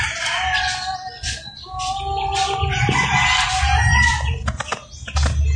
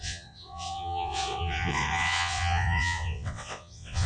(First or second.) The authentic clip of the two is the first